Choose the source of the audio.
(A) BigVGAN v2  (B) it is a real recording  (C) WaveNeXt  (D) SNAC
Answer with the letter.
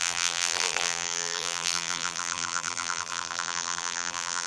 A